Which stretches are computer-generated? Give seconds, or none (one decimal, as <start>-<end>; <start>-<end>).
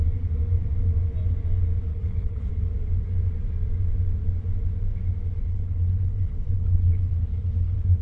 1.9-2.5; 5.5-8.0